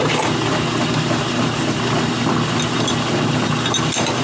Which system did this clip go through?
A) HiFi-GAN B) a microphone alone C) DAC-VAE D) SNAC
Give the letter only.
B